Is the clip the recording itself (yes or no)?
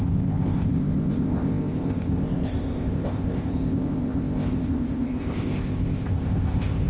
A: no